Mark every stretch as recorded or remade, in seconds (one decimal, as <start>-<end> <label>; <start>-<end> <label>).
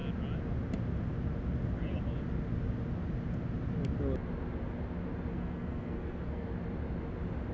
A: 0.0-5.3 recorded; 5.3-6.5 remade; 6.5-7.5 recorded